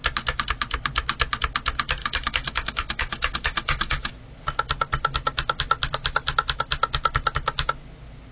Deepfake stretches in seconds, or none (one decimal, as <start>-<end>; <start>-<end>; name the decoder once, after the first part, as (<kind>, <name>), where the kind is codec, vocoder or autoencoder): 2.0-4.1 (autoencoder, DAC-VAE)